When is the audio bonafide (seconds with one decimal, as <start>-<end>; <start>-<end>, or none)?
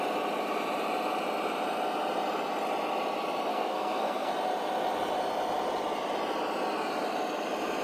0.0-3.5; 4.3-7.8